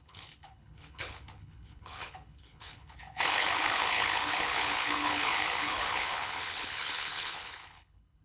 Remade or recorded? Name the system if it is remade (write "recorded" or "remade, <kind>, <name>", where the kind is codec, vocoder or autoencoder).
remade, codec, HILCodec